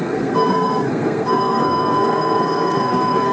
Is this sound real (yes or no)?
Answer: no